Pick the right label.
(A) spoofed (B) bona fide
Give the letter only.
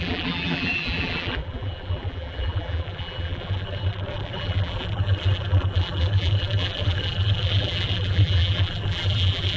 A